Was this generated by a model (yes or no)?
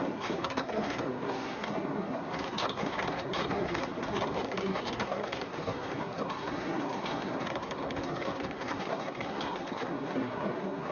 yes